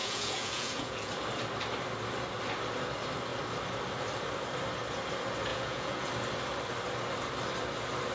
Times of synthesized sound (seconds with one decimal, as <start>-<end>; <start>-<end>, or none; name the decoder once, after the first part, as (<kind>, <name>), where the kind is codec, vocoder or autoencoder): 0.0-1.1 (vocoder, Vocos); 5.5-6.1